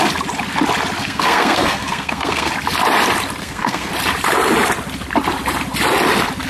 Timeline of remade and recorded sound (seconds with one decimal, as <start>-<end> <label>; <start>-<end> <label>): 0.0-1.0 recorded; 1.0-2.5 remade; 2.5-3.4 recorded; 3.4-3.9 remade; 3.9-6.5 recorded